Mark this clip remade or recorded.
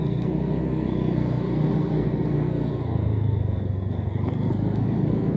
remade